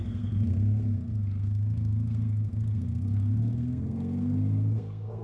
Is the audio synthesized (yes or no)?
yes